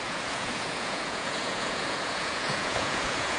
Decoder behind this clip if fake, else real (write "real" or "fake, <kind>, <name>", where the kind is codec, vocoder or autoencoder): fake, vocoder, Vocos